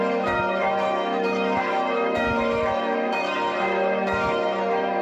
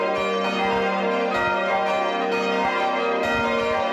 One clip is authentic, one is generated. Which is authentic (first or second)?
second